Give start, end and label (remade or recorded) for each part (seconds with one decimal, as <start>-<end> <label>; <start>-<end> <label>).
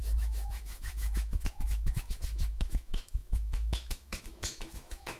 0.0-5.2 remade